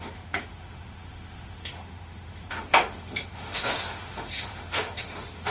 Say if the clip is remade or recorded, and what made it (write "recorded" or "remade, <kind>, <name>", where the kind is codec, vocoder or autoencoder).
remade, autoencoder, DAC-VAE